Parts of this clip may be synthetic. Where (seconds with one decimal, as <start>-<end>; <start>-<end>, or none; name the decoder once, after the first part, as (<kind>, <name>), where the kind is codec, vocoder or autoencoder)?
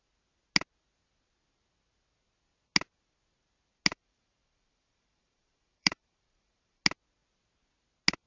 3.9-6.8 (vocoder, BigVGAN v2)